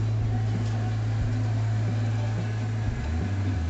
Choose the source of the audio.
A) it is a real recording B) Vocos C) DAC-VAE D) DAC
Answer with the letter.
A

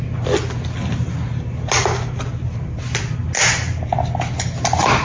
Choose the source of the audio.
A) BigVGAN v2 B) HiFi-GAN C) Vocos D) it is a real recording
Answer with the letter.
D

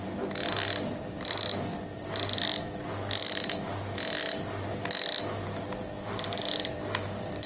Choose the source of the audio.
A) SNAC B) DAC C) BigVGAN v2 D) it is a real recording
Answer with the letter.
D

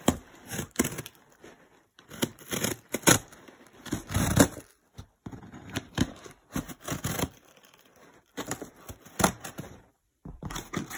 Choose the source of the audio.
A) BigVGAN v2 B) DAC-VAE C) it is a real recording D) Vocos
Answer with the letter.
A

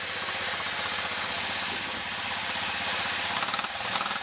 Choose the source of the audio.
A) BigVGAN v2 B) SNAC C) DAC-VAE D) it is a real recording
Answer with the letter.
D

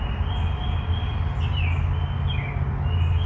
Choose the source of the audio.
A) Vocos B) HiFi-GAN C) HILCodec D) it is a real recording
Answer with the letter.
D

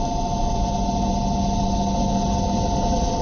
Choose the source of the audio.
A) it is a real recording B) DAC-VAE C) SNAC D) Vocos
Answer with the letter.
A